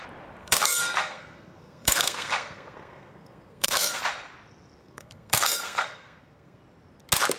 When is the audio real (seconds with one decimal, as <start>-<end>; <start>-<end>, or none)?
0.0-0.4; 4.0-4.8; 6.6-7.4